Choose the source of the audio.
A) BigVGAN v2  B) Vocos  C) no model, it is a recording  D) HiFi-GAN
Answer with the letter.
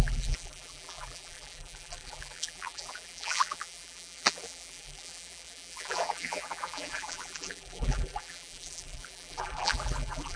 A